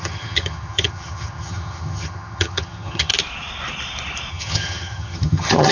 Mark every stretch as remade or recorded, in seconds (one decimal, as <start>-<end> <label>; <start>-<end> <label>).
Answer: 0.0-3.1 remade; 3.1-4.3 recorded; 4.3-5.7 remade